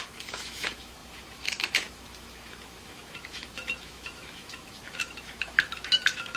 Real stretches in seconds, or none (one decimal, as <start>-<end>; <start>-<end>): none